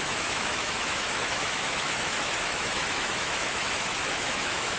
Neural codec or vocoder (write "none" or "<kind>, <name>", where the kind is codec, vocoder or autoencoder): autoencoder, DAC-VAE